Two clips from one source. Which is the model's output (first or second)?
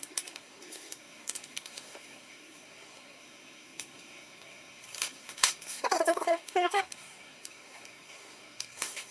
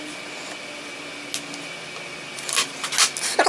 first